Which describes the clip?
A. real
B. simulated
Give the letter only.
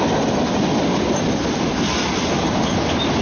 A